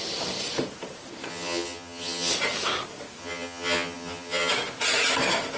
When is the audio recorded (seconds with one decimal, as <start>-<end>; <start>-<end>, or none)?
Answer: 0.0-1.3; 2.3-3.2; 4.5-5.6

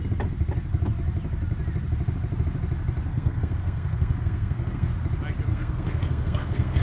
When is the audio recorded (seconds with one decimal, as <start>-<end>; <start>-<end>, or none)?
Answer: 0.0-3.1; 4.9-5.5

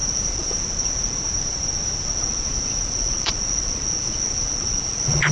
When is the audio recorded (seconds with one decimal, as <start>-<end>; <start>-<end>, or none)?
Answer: 0.6-2.2

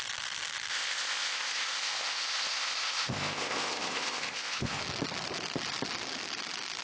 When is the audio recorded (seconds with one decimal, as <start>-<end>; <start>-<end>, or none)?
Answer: 0.0-0.7; 4.8-6.8

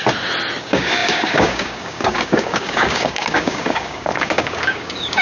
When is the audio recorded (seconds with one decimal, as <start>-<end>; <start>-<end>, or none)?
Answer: 0.0-0.6

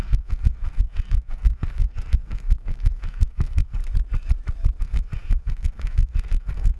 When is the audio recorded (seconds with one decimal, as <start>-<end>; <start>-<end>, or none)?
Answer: 3.8-4.8

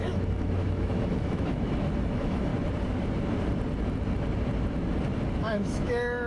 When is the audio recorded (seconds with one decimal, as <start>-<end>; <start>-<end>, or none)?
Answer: 2.5-5.4